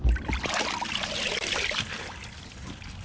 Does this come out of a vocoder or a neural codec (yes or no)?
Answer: no